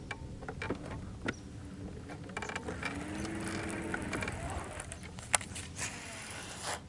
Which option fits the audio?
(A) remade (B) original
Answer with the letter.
B